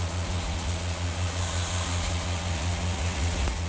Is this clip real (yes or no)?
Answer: no